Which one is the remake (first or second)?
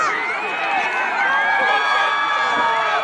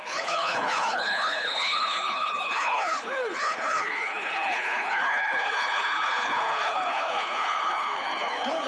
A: second